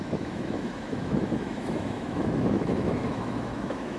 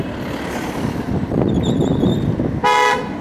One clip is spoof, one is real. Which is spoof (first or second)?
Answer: first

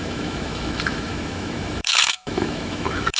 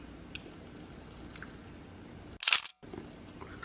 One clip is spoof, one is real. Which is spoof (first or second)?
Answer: first